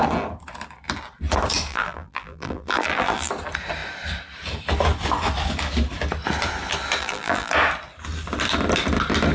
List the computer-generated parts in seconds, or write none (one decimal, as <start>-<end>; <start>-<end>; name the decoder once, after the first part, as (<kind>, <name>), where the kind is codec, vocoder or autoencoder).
1.7-3.3 (vocoder, BigVGAN v2); 7.0-7.5